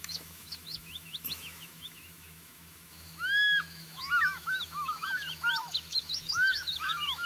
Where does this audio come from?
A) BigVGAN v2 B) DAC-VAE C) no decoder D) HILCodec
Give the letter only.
B